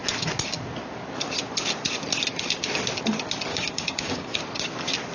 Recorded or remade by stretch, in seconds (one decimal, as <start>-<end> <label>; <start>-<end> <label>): 0.0-3.5 recorded; 3.5-4.4 remade; 4.4-5.1 recorded